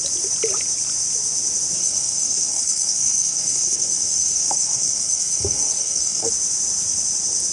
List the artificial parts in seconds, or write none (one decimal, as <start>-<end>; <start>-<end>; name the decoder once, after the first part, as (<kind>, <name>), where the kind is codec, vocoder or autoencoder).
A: 1.8-6.3 (codec, SNAC)